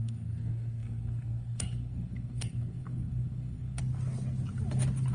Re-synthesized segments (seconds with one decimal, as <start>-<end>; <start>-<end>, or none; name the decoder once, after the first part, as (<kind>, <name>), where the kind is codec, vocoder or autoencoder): 0.0-3.8 (codec, SNAC)

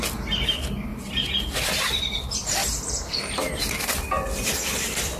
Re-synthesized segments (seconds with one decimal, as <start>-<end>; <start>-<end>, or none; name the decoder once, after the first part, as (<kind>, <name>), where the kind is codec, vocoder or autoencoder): none

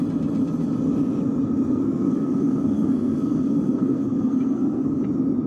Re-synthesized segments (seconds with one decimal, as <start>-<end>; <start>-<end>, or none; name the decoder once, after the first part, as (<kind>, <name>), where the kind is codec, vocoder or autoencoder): 1.7-5.0 (codec, SNAC)

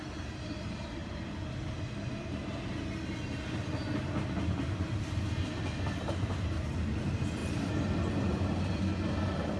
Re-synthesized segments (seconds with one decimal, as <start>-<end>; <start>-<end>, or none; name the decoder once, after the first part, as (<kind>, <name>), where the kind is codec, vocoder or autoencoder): none

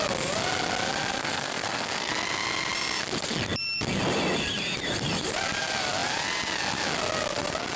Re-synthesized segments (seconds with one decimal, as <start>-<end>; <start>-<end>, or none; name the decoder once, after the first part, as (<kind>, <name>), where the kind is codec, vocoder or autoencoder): 1.2-2.1 (codec, SNAC)

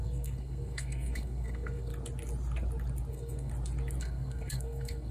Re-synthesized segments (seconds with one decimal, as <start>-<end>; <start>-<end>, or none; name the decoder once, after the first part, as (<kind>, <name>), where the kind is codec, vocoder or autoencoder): 0.0-1.9 (codec, SNAC); 3.1-3.5; 4.0-5.1

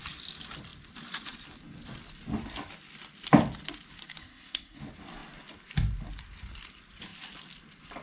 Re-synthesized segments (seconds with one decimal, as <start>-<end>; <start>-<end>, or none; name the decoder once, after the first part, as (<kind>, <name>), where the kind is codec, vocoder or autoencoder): 4.2-4.8 (codec, SNAC)

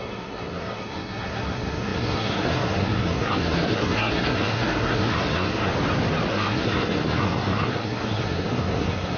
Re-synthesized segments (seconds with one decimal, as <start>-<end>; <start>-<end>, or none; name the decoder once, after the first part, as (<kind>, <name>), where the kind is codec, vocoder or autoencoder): 0.0-5.7 (codec, SNAC); 6.3-9.2